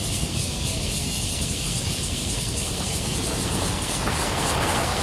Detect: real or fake fake